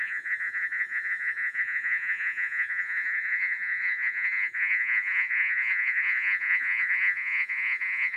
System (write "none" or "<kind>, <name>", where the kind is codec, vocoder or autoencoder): vocoder, Vocos